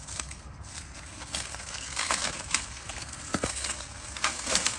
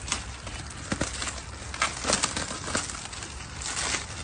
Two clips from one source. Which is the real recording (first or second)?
second